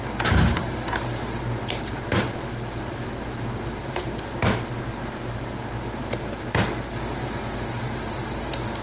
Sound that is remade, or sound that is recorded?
recorded